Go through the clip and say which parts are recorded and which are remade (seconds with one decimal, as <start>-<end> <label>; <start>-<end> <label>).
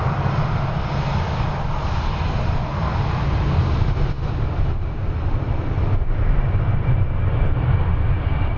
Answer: 0.0-2.7 remade; 2.7-7.2 recorded; 7.2-8.6 remade